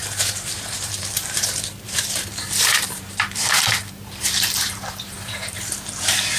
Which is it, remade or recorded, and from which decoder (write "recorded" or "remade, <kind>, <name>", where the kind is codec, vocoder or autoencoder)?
remade, vocoder, BigVGAN v2